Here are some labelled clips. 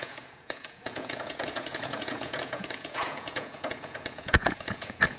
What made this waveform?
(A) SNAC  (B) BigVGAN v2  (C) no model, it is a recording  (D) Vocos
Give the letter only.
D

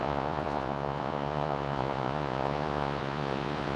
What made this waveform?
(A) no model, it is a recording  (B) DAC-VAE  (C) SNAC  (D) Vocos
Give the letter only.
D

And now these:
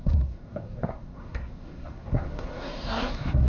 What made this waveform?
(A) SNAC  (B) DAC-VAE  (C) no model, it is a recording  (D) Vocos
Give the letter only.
A